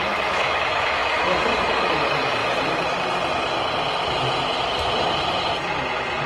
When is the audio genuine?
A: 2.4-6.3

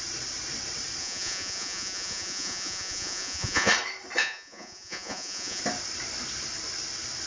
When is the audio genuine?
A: 0.0-1.0; 3.7-4.2; 5.6-7.3

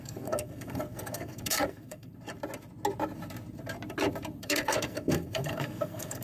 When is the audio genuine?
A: 2.1-4.4

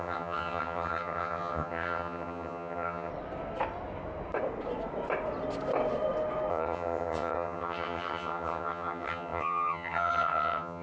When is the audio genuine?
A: 3.1-6.5

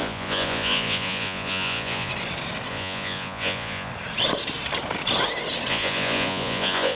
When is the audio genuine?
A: 2.1-2.7; 3.9-5.7

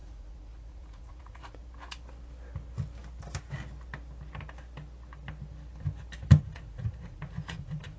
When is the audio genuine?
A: 1.6-6.4

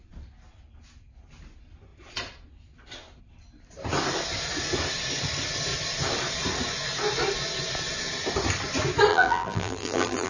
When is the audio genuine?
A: 0.0-9.1

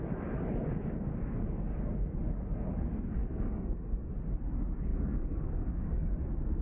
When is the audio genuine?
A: 0.0-3.2; 4.1-4.9